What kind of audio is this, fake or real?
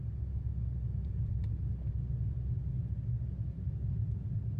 real